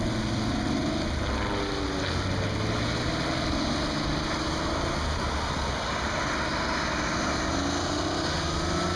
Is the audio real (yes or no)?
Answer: yes